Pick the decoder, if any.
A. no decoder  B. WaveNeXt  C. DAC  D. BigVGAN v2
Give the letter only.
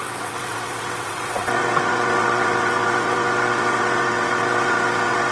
B